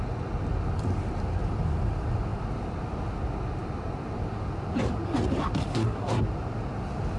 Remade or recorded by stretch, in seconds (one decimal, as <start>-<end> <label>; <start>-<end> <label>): 0.0-5.7 recorded; 5.7-6.2 remade; 6.2-7.2 recorded